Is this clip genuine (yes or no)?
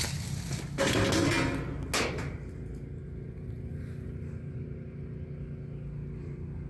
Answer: yes